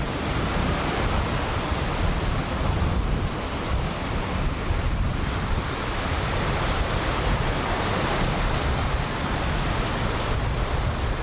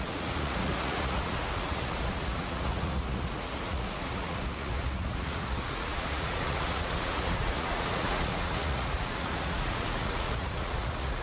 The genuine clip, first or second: first